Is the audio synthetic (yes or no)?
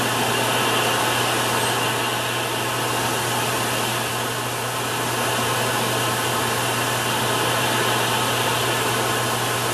no